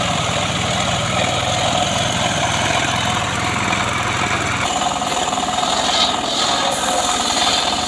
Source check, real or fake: real